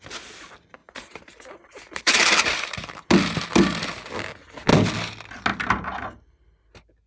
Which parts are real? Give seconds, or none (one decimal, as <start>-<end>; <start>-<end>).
0.0-0.8; 3.1-7.1